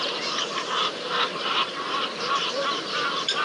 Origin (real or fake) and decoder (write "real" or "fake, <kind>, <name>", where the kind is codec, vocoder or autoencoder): fake, vocoder, BigVGAN v2